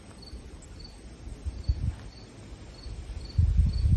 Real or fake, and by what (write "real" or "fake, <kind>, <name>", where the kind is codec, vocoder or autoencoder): real